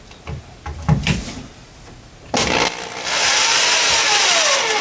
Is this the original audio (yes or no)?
yes